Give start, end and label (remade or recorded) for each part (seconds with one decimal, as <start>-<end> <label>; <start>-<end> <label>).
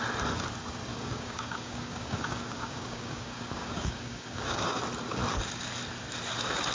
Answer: 0.0-0.9 recorded; 0.9-4.8 remade; 4.8-6.7 recorded